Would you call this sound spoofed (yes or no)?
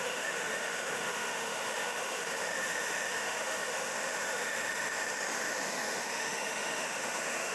yes